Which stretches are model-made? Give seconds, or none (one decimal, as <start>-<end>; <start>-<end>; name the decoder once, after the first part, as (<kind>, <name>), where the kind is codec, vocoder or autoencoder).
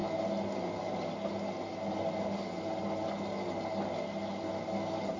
none